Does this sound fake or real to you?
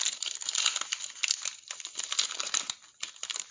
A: real